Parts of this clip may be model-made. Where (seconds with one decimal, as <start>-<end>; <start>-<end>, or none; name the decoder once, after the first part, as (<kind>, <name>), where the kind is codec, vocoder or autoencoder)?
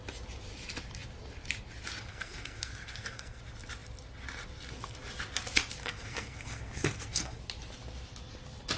2.1-3.4 (codec, SNAC); 5.8-7.4